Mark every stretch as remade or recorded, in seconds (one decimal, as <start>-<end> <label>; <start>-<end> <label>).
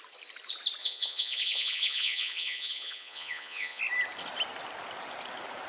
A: 0.0-0.8 recorded; 0.8-3.8 remade; 3.8-5.7 recorded